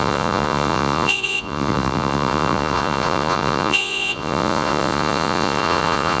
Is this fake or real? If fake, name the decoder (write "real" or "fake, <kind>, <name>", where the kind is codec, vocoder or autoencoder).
fake, vocoder, Vocos